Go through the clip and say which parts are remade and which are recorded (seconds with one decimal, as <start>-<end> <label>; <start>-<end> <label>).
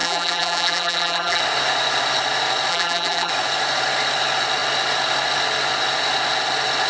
0.0-1.4 remade; 1.4-2.7 recorded; 2.7-3.3 remade; 3.3-6.9 recorded